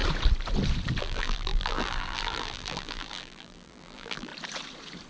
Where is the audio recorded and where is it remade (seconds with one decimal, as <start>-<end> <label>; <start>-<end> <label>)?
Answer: 0.0-1.0 recorded; 1.0-4.3 remade; 4.3-5.1 recorded